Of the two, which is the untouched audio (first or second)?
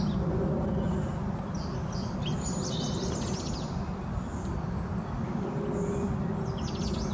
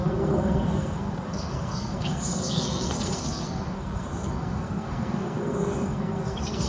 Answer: first